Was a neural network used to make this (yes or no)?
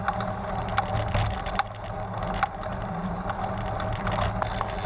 no